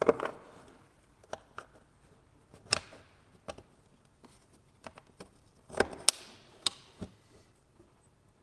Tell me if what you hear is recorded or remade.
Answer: recorded